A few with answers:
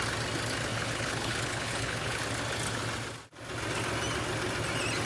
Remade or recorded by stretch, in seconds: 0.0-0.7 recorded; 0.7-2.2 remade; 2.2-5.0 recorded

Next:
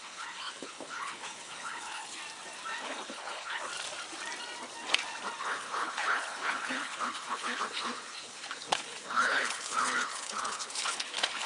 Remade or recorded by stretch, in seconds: 0.0-2.2 remade; 2.2-2.8 recorded; 2.8-3.7 remade; 3.7-5.4 recorded; 5.4-11.5 remade

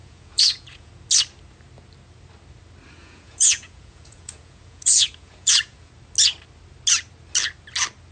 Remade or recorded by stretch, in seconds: 0.0-0.9 remade; 0.9-3.0 recorded; 3.0-5.9 remade; 5.9-8.1 recorded